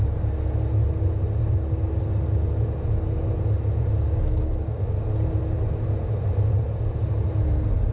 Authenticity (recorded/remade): recorded